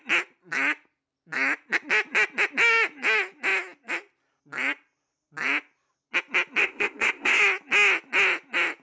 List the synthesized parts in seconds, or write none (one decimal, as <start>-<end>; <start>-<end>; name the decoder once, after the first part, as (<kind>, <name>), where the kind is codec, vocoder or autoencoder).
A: 6.6-7.4 (codec, ZipCodec)